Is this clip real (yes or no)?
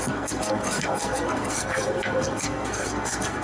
no